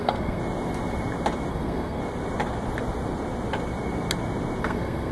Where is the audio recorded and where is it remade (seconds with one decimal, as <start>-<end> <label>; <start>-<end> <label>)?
0.0-0.4 remade; 0.4-1.5 recorded; 1.5-2.0 remade; 2.0-4.6 recorded; 4.6-5.1 remade